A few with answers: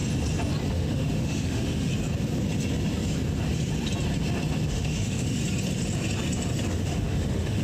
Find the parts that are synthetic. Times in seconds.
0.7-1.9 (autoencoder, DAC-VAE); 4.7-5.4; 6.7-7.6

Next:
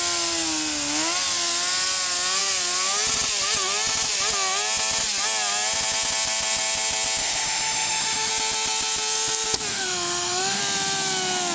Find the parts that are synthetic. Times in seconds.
7.2-8.3 (autoencoder, DAC-VAE); 9.7-10.6

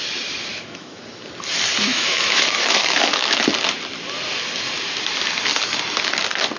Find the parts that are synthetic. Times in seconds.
0.5-1.0 (autoencoder, DAC-VAE); 1.8-3.4

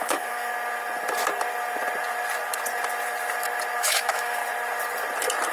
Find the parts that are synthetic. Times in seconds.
0.0-0.5 (autoencoder, DAC-VAE); 3.8-4.4

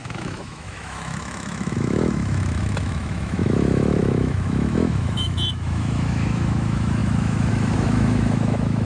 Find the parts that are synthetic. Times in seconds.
0.0-8.8 (autoencoder, DAC-VAE)

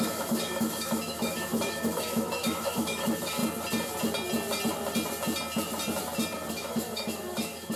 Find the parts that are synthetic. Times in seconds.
0.0-3.4 (autoencoder, DAC-VAE); 6.5-7.8